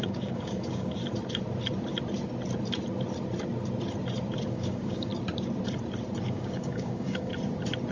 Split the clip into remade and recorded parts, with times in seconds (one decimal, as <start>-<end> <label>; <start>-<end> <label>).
0.0-1.0 remade; 1.0-4.5 recorded; 4.5-5.1 remade; 5.1-6.3 recorded; 6.3-7.3 remade; 7.3-7.9 recorded